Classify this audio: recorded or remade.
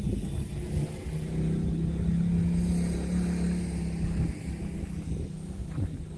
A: recorded